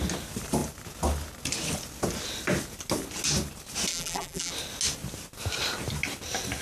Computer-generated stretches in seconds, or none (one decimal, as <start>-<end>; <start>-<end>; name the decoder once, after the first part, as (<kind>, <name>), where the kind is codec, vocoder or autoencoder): 3.9-4.5 (vocoder, BigVGAN v2)